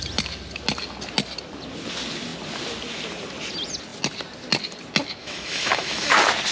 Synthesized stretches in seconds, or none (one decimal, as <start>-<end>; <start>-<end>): 5.2-6.1